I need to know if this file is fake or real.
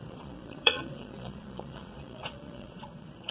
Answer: fake